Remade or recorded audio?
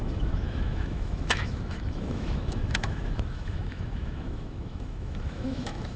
remade